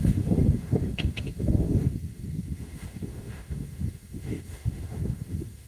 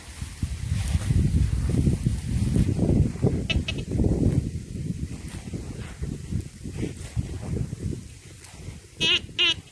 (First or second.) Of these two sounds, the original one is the second